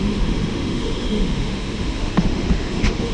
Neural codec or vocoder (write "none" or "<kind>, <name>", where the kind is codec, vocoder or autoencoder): autoencoder, DAC-VAE